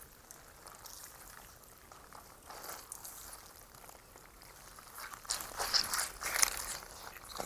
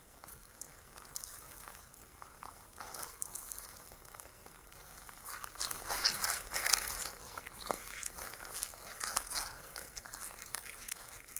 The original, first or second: first